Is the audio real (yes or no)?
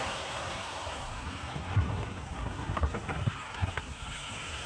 no